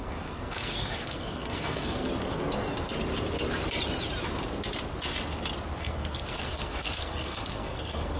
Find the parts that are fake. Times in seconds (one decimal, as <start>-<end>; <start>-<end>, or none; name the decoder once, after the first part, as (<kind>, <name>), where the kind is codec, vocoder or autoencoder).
0.0-2.1 (codec, SNAC); 5.8-8.2